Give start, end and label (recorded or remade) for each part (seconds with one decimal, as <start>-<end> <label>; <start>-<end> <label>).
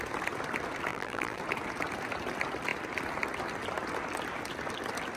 0.0-0.9 recorded; 0.9-1.4 remade; 1.4-5.2 recorded